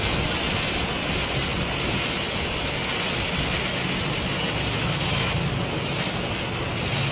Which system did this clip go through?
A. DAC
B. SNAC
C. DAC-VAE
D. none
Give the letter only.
D